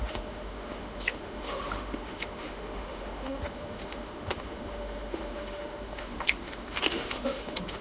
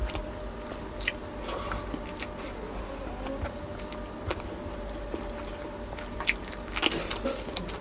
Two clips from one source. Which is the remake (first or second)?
first